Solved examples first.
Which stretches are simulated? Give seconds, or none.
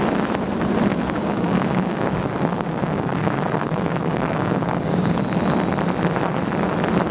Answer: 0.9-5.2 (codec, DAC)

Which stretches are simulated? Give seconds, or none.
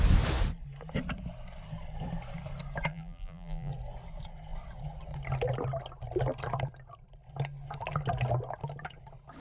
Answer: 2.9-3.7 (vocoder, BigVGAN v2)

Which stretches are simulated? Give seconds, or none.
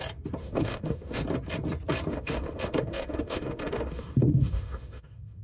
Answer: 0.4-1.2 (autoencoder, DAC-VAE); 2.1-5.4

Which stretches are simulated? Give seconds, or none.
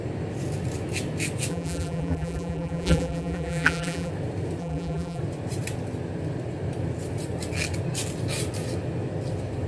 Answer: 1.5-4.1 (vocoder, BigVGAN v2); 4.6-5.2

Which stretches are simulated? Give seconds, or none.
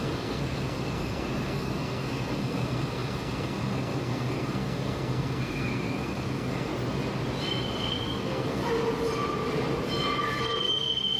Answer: 0.0-6.7 (codec, SNAC); 7.4-8.6; 10.4-11.2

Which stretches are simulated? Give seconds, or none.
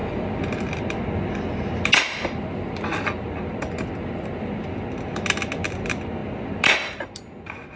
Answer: none